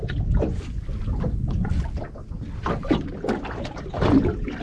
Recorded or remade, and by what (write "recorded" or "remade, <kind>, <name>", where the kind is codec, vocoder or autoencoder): recorded